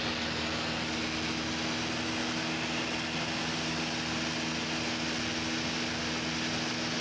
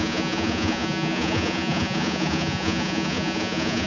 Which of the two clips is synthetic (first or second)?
second